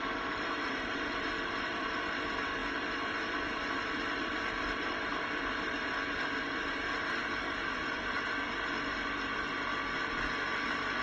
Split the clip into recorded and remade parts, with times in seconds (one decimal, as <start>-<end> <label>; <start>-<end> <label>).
0.0-9.7 remade; 9.7-11.0 recorded